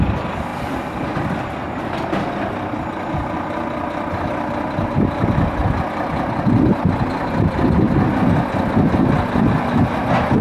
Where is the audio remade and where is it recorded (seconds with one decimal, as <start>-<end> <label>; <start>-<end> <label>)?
0.0-10.4 recorded